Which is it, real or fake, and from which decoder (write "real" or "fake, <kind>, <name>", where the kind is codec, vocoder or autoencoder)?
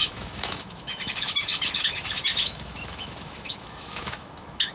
fake, autoencoder, DAC-VAE